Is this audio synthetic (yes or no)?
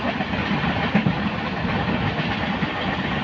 no